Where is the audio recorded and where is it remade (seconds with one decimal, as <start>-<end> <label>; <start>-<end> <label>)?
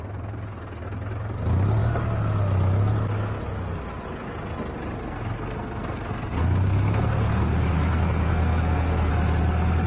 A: 0.0-5.0 recorded; 5.0-9.1 remade; 9.1-9.9 recorded